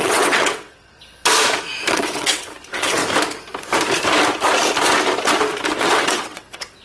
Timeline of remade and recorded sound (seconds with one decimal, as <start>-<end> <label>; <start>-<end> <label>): 0.0-1.0 remade; 1.0-1.9 recorded; 1.9-3.0 remade; 3.0-5.8 recorded; 5.8-6.8 remade